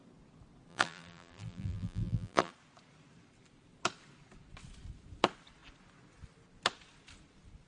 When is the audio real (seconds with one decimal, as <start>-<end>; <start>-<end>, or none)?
0.0-0.7; 2.5-7.7

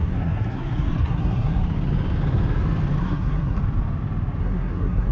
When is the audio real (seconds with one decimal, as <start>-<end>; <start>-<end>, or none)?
1.6-3.0; 3.6-4.4

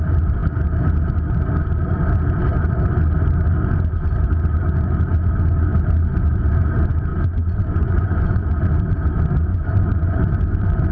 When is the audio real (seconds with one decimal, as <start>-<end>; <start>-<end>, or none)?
0.0-7.1; 8.6-9.5